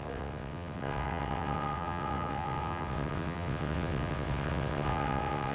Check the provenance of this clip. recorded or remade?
remade